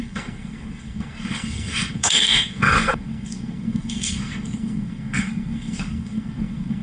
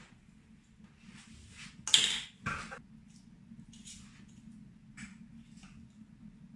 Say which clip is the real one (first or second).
second